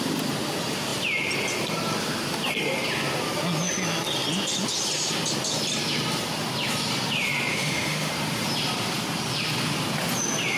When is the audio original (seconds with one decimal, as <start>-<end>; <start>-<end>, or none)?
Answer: 0.0-7.5; 8.1-10.6